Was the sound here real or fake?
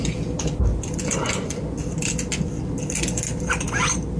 real